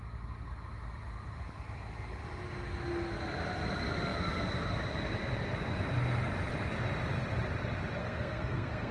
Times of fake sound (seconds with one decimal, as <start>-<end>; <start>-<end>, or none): 8.0-8.9